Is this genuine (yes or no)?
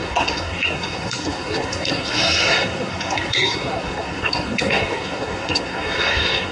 no